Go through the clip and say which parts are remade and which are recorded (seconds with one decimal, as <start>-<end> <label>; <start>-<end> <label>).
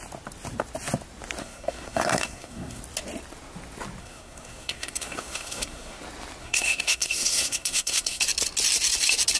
0.0-1.4 recorded; 1.4-2.8 remade; 2.8-4.0 recorded; 4.0-6.0 remade; 6.0-6.4 recorded; 6.4-8.2 remade; 8.2-9.4 recorded